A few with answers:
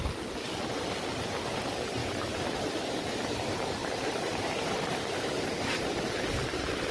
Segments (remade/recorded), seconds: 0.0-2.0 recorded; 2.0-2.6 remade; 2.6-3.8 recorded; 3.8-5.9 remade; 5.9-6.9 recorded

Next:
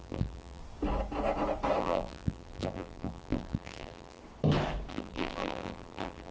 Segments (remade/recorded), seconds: 0.0-0.6 remade; 0.6-1.8 recorded; 1.8-4.2 remade; 4.2-4.9 recorded; 4.9-6.3 remade

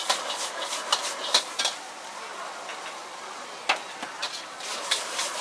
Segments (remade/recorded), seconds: 0.0-5.4 recorded